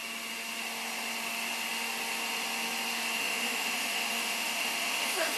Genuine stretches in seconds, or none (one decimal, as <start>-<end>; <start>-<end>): 0.0-3.2